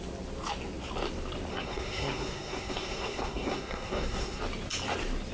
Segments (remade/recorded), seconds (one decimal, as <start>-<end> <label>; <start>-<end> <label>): 0.0-1.5 recorded; 1.5-4.4 remade; 4.4-5.3 recorded